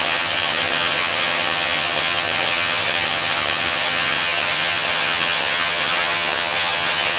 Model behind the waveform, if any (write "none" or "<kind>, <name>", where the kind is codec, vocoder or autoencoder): vocoder, HiFi-GAN